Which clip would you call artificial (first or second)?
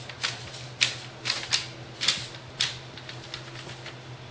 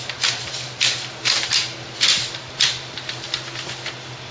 second